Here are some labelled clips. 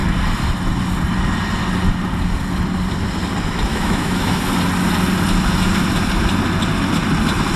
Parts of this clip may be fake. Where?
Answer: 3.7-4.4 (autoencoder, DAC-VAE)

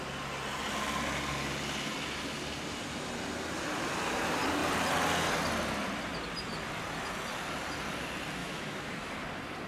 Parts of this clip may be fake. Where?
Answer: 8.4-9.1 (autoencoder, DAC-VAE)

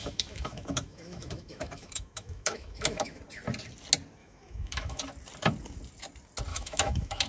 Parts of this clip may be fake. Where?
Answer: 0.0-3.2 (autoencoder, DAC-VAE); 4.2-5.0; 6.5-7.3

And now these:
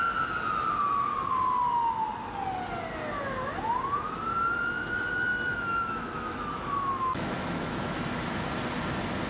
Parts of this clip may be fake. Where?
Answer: 5.3-8.5 (autoencoder, DAC-VAE)